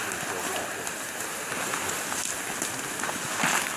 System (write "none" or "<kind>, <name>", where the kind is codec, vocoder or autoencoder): none